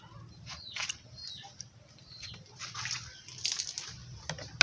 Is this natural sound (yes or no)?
yes